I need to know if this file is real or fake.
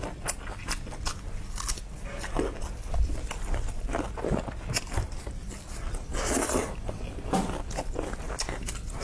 real